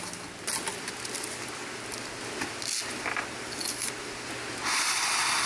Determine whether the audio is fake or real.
real